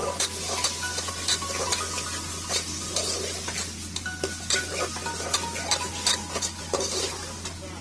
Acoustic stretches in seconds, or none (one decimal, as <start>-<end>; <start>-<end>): 0.0-7.8